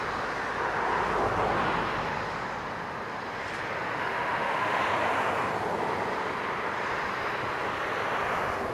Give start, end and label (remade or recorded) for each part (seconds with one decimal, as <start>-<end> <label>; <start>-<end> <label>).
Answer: 0.0-4.1 recorded; 4.1-4.8 remade; 4.8-8.7 recorded